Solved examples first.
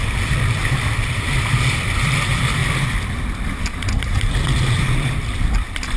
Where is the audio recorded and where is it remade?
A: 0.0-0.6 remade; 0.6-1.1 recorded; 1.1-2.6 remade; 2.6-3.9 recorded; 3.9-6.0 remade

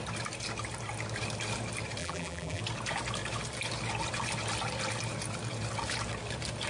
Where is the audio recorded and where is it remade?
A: 0.0-2.0 recorded; 2.0-2.6 remade; 2.6-6.7 recorded

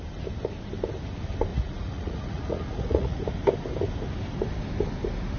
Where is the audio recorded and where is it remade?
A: 0.0-1.5 recorded; 1.5-3.2 remade; 3.2-5.4 recorded

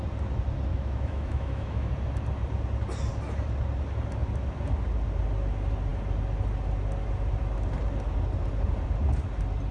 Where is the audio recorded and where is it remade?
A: 0.0-0.7 recorded; 0.7-1.9 remade; 1.9-9.7 recorded

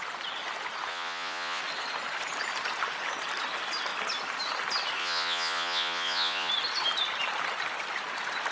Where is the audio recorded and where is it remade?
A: 0.0-0.9 recorded; 0.9-1.6 remade; 1.6-5.0 recorded; 5.0-6.5 remade; 6.5-8.5 recorded

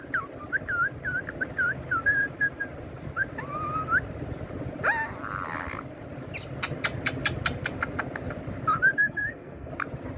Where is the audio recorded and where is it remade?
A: 0.0-9.0 recorded; 9.0-9.7 remade; 9.7-10.2 recorded

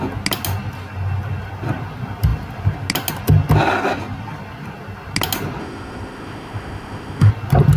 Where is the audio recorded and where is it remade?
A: 0.0-5.6 recorded; 5.6-7.3 remade; 7.3-7.8 recorded